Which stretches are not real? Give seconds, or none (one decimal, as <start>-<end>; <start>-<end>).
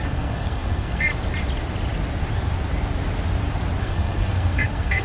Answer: 0.0-1.1; 3.8-5.0